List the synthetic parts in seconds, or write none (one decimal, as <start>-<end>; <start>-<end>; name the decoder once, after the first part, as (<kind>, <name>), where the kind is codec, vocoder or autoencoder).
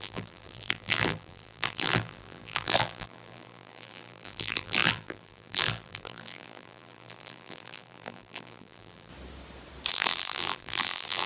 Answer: 0.0-9.1 (vocoder, BigVGAN v2); 9.9-11.3